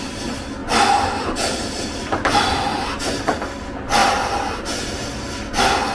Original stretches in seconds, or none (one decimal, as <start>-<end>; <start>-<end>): 0.0-0.6; 3.4-4.0; 4.8-5.9